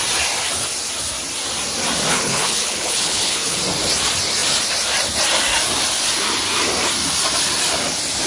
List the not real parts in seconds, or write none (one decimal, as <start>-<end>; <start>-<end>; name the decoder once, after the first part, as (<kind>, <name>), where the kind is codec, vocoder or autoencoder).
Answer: 2.1-3.6 (codec, HILCodec)